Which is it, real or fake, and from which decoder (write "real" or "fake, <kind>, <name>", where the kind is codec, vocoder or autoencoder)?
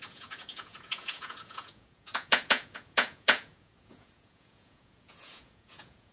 fake, vocoder, Vocos